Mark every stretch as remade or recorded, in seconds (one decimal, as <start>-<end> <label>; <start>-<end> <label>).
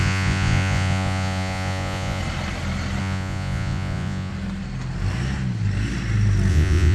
0.0-2.2 remade; 2.2-3.0 recorded; 3.0-4.3 remade; 4.3-6.5 recorded; 6.5-6.9 remade